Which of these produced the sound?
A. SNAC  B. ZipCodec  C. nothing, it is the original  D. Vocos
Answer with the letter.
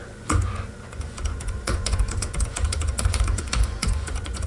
D